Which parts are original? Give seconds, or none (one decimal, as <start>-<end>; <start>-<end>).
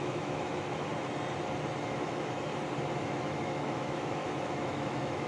0.9-1.8; 2.5-3.0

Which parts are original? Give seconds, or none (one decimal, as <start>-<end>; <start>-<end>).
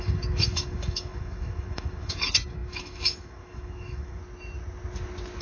4.2-5.4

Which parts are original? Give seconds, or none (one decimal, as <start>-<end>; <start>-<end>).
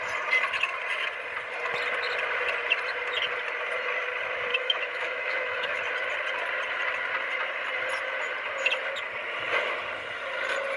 0.0-4.5; 5.8-10.8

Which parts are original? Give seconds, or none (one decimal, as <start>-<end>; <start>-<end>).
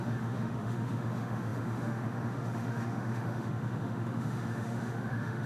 none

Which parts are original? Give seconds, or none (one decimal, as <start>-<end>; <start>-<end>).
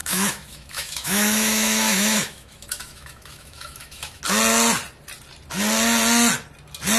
4.2-7.0